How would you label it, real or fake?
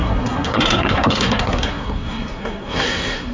fake